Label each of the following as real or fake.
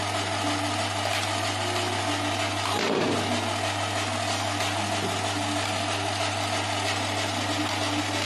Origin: real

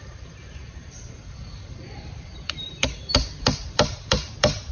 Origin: fake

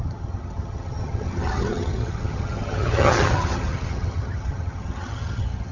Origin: fake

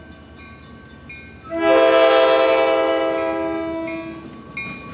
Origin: real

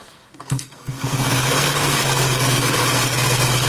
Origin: fake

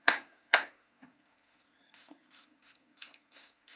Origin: fake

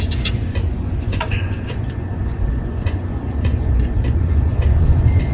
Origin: fake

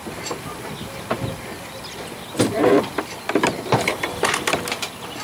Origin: real